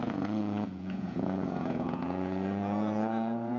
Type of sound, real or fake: fake